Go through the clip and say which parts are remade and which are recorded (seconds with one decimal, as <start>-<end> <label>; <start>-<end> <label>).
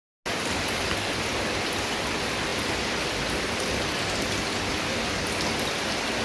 0.0-6.2 recorded